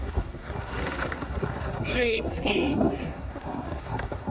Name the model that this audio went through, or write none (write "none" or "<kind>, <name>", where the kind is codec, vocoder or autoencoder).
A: codec, SNAC